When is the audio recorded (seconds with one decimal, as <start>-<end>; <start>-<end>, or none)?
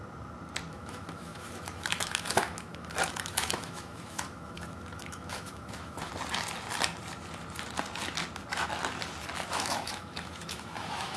0.0-0.7; 6.1-9.5